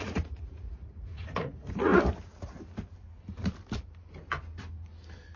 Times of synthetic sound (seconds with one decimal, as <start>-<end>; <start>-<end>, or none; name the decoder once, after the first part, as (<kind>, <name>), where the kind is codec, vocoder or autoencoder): 0.0-1.9 (vocoder, Vocos)

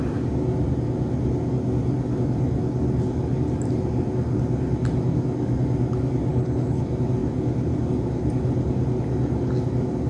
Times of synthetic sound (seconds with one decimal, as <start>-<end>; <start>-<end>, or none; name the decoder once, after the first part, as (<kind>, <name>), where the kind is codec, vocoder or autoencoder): 6.3-6.8 (codec, HILCodec)

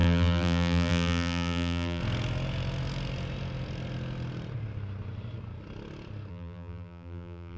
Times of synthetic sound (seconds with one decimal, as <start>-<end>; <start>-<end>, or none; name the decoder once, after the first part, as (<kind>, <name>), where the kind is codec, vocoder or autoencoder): 0.0-2.0 (vocoder, BigVGAN v2); 6.3-7.6

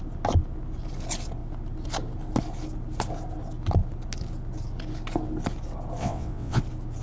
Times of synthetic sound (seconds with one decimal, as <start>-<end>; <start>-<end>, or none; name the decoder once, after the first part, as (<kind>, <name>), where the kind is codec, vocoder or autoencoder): 6.0-6.6 (vocoder, WaveNeXt)

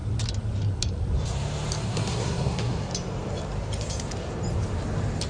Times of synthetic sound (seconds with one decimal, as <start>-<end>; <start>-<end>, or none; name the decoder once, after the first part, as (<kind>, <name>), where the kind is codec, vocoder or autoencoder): 1.8-2.9 (codec, SNAC)

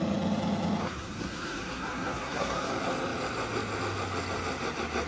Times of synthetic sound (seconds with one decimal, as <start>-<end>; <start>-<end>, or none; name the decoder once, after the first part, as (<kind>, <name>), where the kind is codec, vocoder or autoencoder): 0.8-2.7 (codec, SNAC)